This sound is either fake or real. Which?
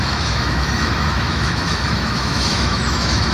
fake